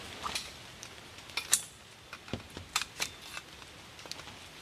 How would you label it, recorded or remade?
recorded